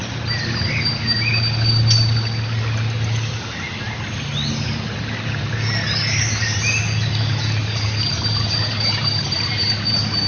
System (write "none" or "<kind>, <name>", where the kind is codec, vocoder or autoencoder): none